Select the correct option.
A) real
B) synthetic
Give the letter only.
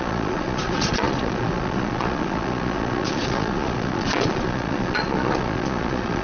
B